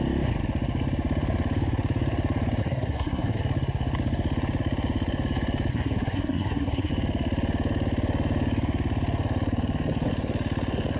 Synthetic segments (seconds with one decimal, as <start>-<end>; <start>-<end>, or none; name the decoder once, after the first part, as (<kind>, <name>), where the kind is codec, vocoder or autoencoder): 2.6-3.4 (codec, SNAC); 5.7-6.9